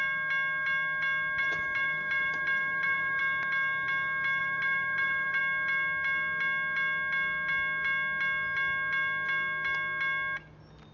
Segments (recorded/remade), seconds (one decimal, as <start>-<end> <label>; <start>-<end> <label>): 0.0-1.4 recorded; 1.4-3.2 remade; 3.2-4.4 recorded; 4.4-5.4 remade; 5.4-10.9 recorded